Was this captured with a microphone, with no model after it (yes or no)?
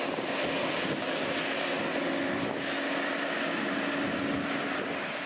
yes